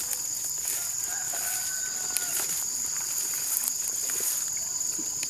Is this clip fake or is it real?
real